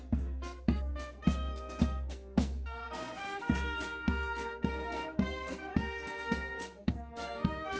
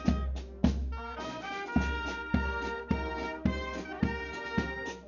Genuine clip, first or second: second